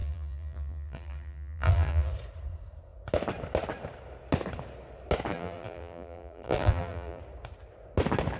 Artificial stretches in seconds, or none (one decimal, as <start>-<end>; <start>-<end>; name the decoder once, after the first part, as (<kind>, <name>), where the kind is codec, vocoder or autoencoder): 0.0-2.1 (vocoder, BigVGAN v2); 5.3-7.2